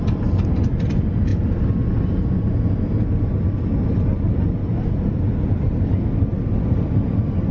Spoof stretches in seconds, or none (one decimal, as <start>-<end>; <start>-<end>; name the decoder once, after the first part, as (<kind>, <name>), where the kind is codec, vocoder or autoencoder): none